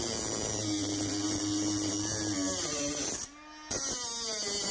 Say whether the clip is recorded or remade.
recorded